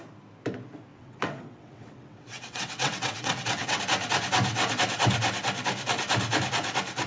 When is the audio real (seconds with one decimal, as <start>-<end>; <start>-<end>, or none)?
0.0-0.9; 3.8-7.1